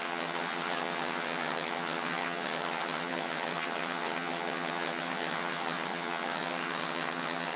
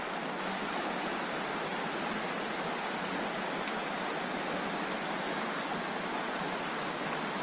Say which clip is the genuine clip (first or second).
second